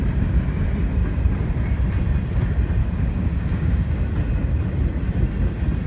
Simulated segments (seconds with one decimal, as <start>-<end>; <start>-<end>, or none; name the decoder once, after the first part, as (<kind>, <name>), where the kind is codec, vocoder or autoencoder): 2.8-3.9 (codec, DAC)